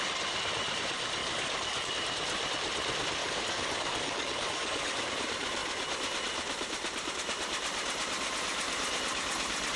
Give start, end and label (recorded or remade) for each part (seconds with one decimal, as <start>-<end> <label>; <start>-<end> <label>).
0.0-1.2 recorded; 1.2-1.9 remade; 1.9-3.2 recorded; 3.2-5.1 remade; 5.1-9.8 recorded